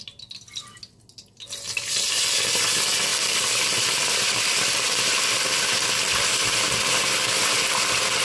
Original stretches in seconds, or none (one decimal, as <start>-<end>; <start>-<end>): 0.0-8.2